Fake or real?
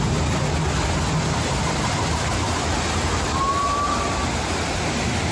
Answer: real